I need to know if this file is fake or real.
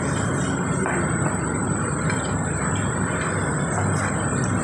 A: fake